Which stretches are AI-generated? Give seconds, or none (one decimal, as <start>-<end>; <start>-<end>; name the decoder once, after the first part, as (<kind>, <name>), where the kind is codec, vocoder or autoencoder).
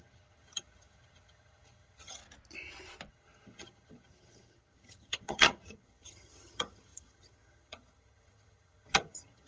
0.0-2.2 (vocoder, HiFi-GAN); 3.1-9.5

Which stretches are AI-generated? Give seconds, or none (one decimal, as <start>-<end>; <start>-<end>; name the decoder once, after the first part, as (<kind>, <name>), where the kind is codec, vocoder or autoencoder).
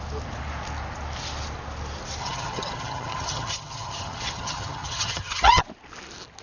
2.2-5.6 (vocoder, HiFi-GAN)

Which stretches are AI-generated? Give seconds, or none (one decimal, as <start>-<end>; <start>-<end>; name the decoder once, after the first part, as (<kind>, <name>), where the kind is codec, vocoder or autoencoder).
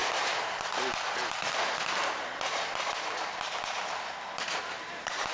none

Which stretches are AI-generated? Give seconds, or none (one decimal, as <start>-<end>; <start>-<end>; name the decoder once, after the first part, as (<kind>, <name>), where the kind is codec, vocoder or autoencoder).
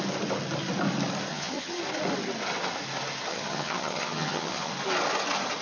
1.3-1.8 (vocoder, HiFi-GAN); 3.3-4.7